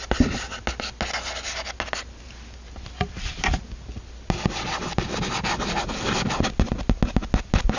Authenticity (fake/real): real